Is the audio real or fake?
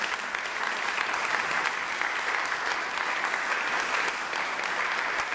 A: real